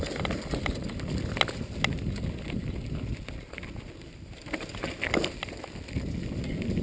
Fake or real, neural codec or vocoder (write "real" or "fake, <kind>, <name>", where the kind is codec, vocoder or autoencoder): real